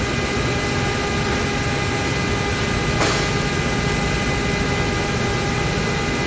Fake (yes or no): no